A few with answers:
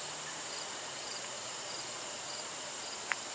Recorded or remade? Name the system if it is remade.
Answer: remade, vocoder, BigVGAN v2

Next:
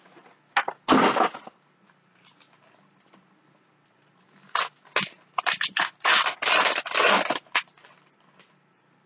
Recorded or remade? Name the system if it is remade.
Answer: recorded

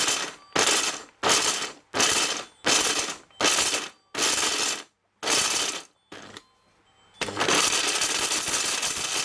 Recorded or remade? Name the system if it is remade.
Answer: recorded